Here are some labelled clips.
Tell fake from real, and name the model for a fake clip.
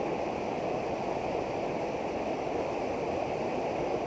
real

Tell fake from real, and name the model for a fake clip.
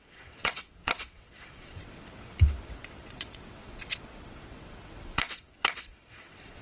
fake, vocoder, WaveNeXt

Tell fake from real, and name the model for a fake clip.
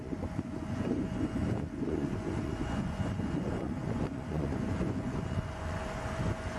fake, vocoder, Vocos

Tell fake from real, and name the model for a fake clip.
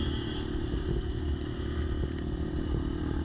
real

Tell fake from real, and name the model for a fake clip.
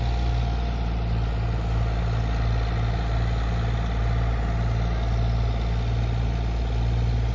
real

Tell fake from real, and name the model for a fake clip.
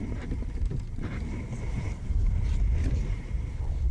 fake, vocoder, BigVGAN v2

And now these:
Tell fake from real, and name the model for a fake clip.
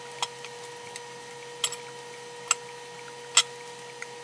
real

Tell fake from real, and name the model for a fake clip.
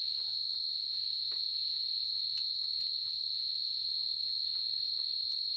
real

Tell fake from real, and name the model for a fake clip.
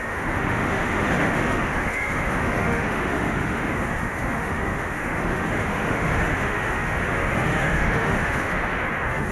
fake, autoencoder, DAC-VAE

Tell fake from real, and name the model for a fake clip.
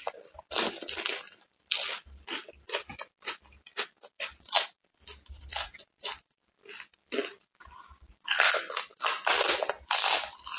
real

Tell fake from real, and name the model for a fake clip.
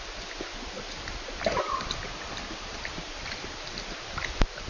real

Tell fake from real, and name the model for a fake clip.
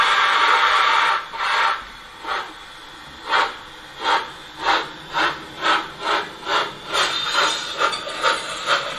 real